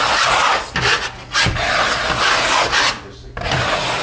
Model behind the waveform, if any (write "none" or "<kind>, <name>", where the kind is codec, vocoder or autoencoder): none